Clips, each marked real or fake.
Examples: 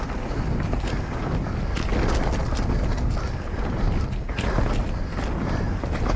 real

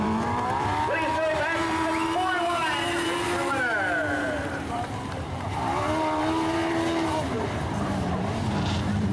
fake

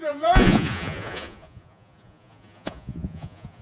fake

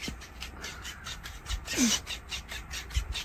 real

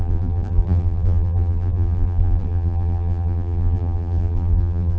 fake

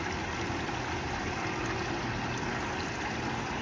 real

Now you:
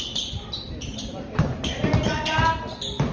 real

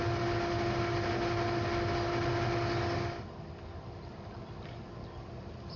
real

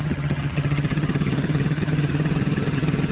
fake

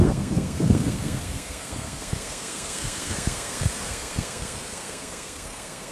fake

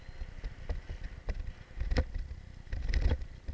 real